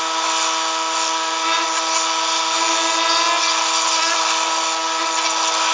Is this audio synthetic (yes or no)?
no